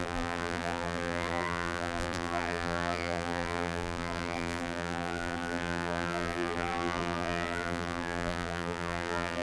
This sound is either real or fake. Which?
fake